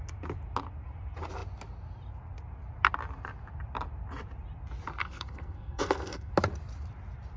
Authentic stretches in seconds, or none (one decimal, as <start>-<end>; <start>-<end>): 0.0-5.0; 6.3-7.4